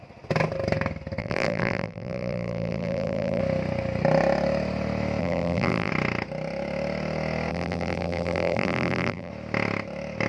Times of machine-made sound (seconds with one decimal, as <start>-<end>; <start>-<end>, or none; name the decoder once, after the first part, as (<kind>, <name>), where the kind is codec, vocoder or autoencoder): 1.2-3.4 (vocoder, BigVGAN v2); 5.2-5.9; 7.5-9.3